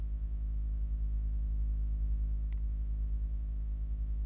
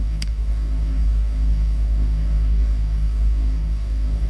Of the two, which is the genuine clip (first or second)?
first